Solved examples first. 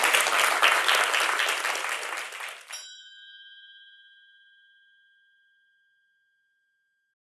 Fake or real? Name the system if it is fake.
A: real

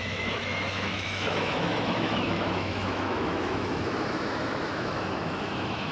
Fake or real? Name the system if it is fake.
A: fake, autoencoder, DAC-VAE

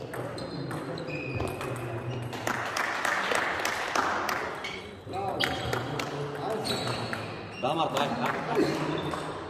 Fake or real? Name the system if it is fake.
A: real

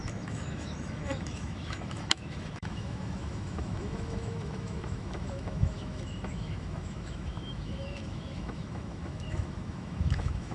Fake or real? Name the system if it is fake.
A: fake, autoencoder, DAC-VAE